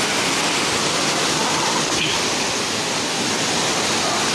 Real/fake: real